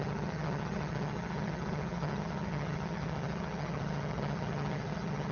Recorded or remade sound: remade